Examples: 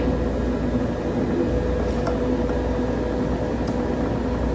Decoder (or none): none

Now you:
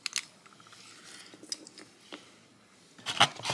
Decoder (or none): none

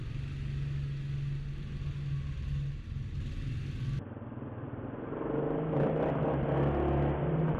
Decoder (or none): none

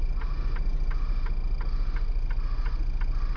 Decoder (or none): none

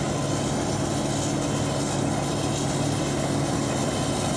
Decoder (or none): none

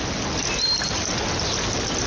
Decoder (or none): none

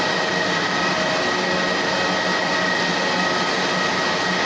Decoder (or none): none